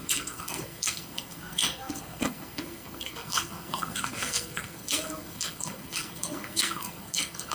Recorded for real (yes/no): no